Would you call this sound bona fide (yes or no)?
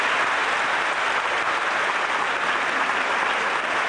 yes